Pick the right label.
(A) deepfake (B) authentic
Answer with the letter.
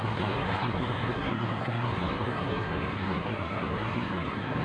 A